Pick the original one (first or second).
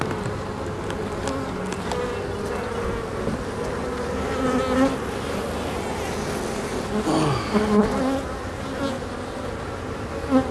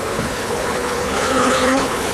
first